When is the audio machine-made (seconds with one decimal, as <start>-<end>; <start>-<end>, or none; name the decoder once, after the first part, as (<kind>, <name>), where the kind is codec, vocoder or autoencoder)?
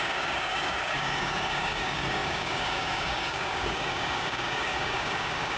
0.0-5.6 (codec, DAC)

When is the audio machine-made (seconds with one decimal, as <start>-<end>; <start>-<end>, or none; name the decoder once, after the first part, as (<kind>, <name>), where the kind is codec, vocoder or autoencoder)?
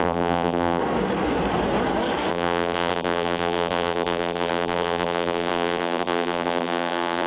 0.0-0.8 (vocoder, BigVGAN v2); 2.3-7.3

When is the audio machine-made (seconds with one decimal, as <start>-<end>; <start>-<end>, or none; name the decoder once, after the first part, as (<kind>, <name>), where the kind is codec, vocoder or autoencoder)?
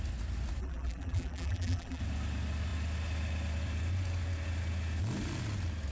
0.6-2.0 (vocoder, BigVGAN v2)